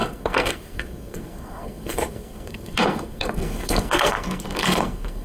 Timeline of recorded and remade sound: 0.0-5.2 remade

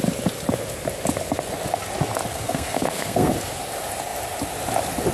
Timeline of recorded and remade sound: 0.0-2.3 recorded; 2.3-3.3 remade; 3.3-5.1 recorded